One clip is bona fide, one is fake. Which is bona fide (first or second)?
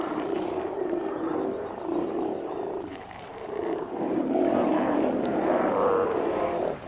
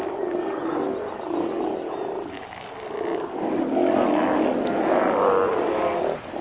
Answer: second